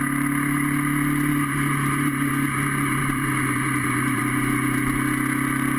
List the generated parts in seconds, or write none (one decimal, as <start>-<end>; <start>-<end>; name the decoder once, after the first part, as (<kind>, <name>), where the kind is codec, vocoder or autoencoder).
3.0-4.2 (vocoder, BigVGAN v2)